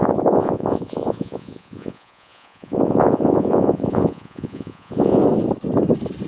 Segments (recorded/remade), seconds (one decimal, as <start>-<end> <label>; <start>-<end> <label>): 0.0-5.2 remade; 5.2-6.3 recorded